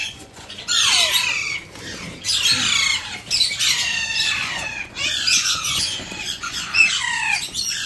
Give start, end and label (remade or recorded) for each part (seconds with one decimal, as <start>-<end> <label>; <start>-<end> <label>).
0.0-0.9 remade; 0.9-4.4 recorded; 4.4-7.9 remade